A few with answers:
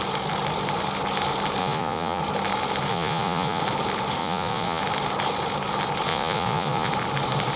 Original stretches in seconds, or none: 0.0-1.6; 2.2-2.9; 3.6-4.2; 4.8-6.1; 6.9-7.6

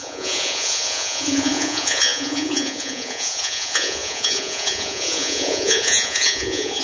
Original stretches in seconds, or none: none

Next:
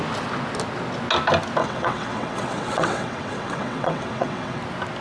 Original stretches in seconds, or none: 0.0-1.6; 4.6-5.0